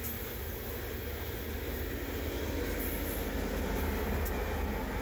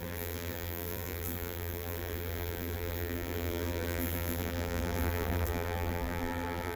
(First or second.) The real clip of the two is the first